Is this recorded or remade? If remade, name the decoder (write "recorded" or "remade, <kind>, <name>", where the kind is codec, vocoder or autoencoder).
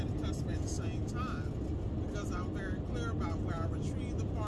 recorded